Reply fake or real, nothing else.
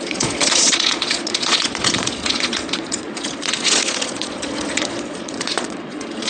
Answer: fake